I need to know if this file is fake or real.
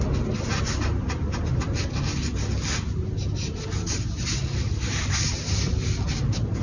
real